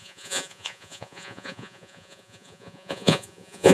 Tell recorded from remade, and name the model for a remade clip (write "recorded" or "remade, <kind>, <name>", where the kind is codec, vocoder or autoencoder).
remade, vocoder, Vocos